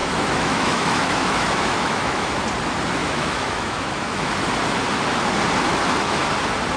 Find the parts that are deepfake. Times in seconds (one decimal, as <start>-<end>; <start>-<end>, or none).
0.0-2.4; 3.0-4.3; 5.7-6.2